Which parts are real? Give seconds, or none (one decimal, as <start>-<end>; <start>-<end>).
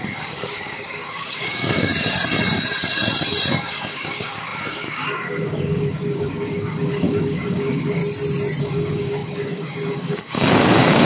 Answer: 1.9-3.6; 8.0-8.6